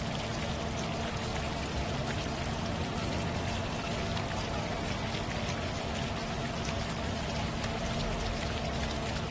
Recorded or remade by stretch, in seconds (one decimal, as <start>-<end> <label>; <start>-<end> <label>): 0.0-1.3 recorded; 1.3-3.4 remade; 3.4-9.3 recorded